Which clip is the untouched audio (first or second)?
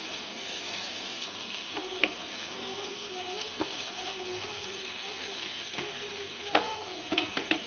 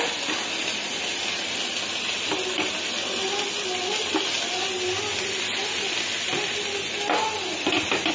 second